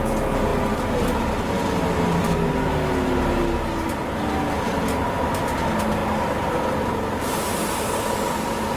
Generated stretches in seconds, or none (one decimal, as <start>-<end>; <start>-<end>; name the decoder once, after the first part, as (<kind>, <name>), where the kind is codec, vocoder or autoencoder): none